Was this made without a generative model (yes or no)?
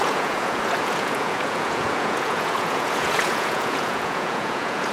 no